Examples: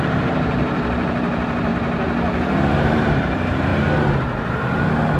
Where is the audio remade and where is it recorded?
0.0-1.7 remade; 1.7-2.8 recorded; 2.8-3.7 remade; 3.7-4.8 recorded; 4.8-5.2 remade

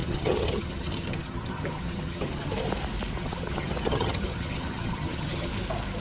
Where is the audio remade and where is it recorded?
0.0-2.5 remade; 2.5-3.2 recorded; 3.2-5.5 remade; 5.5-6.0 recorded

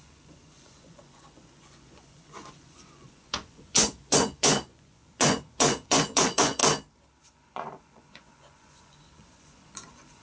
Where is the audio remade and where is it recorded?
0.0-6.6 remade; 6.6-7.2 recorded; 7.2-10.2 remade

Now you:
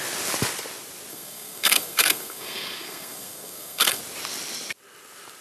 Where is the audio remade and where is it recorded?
0.0-1.1 recorded; 1.1-4.0 remade; 4.0-5.4 recorded